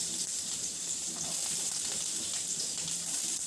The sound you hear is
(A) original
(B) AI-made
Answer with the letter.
B